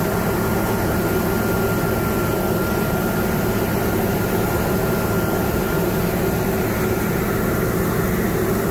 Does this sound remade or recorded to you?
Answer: recorded